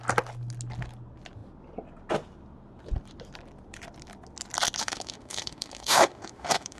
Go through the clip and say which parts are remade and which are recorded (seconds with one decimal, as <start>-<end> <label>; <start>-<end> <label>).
0.0-4.8 recorded; 4.8-6.8 remade